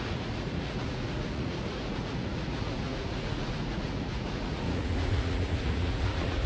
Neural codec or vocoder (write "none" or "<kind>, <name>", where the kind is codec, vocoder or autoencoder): vocoder, Vocos